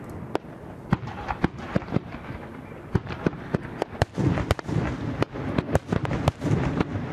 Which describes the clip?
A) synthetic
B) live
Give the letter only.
B